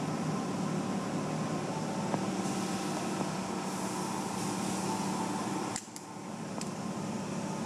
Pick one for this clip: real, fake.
real